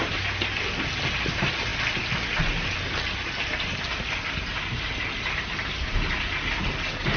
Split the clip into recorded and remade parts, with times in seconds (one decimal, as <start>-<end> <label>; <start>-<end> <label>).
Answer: 0.0-7.2 recorded